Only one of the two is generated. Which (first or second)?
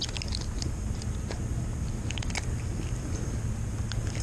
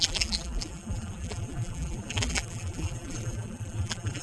second